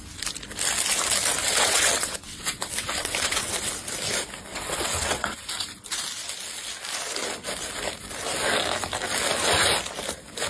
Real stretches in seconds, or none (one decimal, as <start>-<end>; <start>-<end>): 0.0-1.4; 3.7-4.5; 5.4-10.5